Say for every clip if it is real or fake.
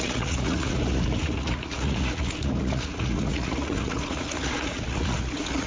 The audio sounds fake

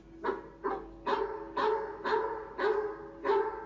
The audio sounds real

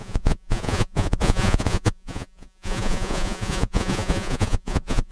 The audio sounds fake